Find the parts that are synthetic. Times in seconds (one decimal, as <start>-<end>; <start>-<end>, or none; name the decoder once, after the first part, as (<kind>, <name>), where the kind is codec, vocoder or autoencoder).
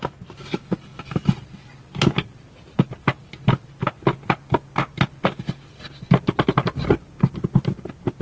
none